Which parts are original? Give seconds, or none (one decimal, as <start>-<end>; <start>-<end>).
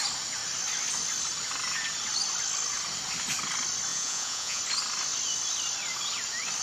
0.0-3.9; 4.6-6.6